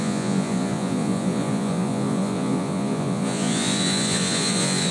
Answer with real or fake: fake